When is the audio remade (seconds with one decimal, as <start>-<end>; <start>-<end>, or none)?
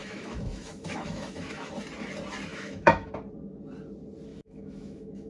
0.0-1.7; 2.5-3.1; 4.3-5.3